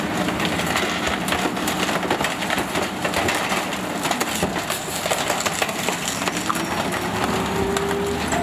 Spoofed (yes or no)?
no